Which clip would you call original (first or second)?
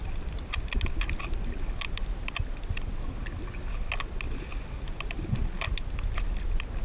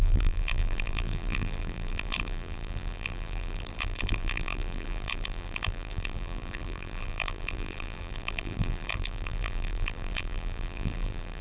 first